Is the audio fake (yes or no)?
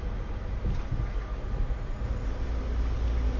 no